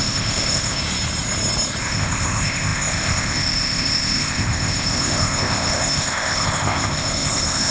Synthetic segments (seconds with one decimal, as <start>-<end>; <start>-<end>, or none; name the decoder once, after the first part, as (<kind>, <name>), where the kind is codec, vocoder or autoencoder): 0.0-0.8 (codec, ZipCodec); 1.8-7.7